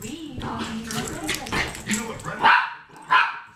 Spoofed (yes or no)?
no